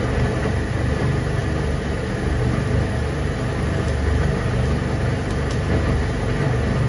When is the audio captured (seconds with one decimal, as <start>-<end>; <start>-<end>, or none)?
0.0-6.9